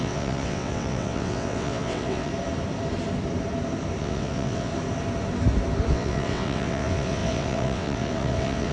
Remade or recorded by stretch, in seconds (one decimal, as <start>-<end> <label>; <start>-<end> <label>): 0.0-2.3 remade; 2.3-4.0 recorded; 4.0-4.7 remade; 4.7-5.9 recorded; 5.9-8.7 remade